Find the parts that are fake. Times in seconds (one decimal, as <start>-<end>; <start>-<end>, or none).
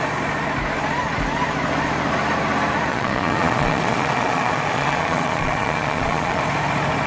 2.9-6.4